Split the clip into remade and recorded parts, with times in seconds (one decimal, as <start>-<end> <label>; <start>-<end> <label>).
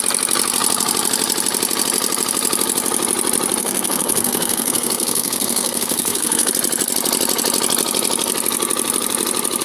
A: 0.0-3.6 recorded; 3.6-6.5 remade; 6.5-9.6 recorded